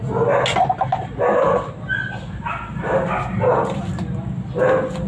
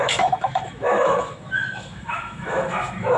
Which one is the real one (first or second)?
first